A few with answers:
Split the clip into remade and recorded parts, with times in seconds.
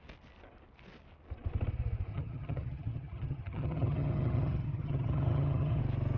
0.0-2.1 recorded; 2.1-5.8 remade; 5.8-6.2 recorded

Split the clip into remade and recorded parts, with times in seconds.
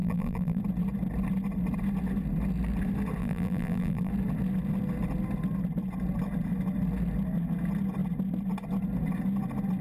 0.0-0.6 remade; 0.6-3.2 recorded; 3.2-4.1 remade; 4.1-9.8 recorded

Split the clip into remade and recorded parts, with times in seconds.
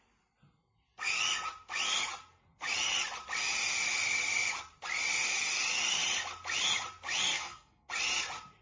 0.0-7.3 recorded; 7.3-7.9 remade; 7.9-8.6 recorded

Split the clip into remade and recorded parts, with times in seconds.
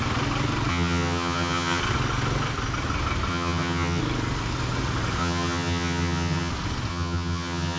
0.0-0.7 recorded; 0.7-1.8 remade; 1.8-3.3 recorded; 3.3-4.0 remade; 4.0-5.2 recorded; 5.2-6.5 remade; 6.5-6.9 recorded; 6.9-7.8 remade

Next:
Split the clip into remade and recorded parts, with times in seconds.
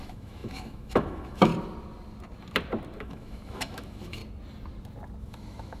0.0-1.5 remade; 1.5-3.0 recorded; 3.0-4.2 remade; 4.2-5.2 recorded; 5.2-5.8 remade